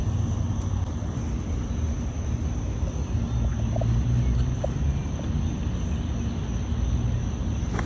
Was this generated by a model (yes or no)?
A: no